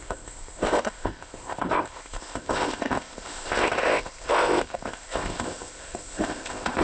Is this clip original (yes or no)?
no